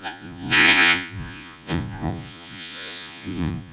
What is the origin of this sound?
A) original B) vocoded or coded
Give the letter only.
B